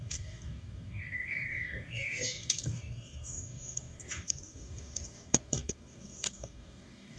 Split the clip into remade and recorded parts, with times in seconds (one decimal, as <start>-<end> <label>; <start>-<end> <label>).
0.0-7.2 remade